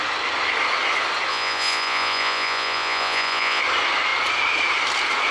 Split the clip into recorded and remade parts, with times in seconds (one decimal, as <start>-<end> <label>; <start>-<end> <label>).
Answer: 0.0-1.3 recorded; 1.3-3.6 remade; 3.6-5.3 recorded